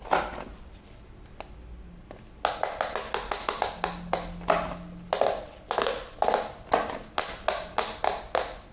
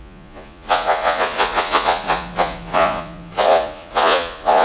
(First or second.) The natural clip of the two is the first